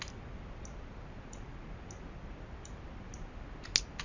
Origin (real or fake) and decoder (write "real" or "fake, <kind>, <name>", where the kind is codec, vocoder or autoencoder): real